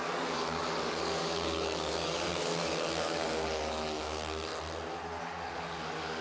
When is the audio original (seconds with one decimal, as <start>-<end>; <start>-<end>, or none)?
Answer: 4.5-5.2